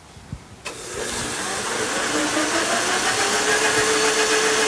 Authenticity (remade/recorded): recorded